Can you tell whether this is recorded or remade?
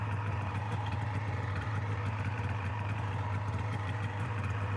remade